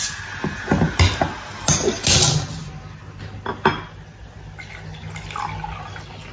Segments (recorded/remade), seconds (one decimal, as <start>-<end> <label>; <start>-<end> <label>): 0.0-6.3 recorded